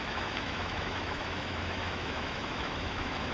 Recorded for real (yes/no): no